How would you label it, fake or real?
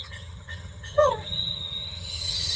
fake